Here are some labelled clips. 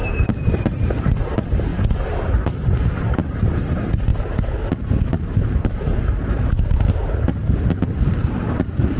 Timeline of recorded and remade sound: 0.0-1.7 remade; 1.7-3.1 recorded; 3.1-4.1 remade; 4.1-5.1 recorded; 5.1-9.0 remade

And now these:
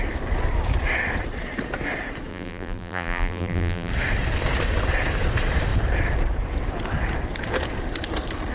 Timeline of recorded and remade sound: 0.0-2.3 recorded; 2.3-3.9 remade; 3.9-8.5 recorded

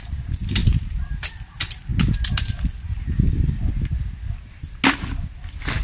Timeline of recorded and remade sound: 0.0-5.8 recorded